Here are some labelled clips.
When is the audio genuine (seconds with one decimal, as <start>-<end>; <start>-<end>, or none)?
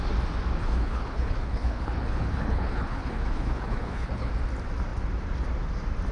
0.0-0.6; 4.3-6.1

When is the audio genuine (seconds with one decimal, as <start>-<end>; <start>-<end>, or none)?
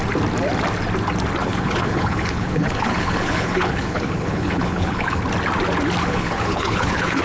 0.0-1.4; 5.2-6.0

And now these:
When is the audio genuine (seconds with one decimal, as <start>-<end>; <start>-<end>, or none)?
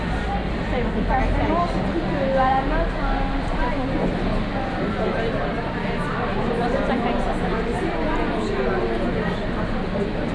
0.0-10.3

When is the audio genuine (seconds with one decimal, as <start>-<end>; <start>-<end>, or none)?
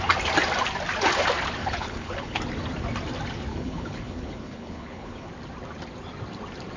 0.0-1.6; 2.4-3.5; 5.3-6.8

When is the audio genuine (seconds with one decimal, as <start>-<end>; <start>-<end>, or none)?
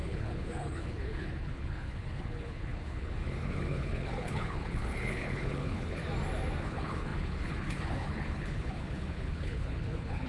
6.0-6.6